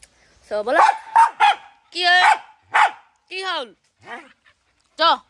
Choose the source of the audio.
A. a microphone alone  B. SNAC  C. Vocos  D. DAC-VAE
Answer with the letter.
A